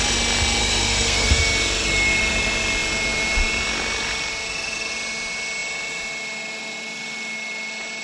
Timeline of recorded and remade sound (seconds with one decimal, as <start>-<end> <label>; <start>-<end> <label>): 0.0-0.6 recorded; 0.6-1.4 remade; 1.4-8.0 recorded

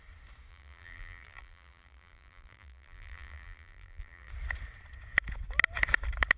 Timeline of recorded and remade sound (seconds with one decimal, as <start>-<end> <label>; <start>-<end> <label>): 0.0-0.5 recorded; 0.5-4.3 remade; 4.3-6.4 recorded